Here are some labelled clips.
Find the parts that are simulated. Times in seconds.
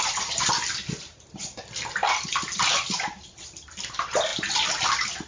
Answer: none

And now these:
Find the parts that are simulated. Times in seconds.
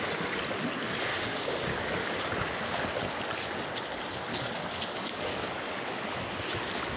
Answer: 1.1-2.1 (codec, DAC); 4.3-5.7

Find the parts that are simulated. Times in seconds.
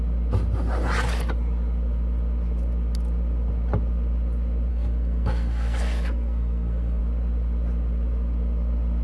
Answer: 4.7-7.0 (codec, SNAC)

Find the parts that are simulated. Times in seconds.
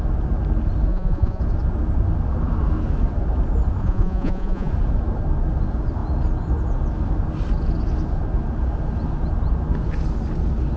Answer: 0.9-1.4 (vocoder, Vocos); 3.8-4.7